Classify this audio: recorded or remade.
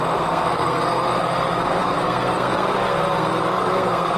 remade